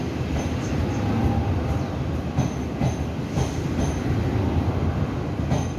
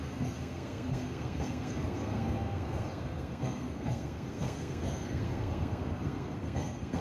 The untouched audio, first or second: first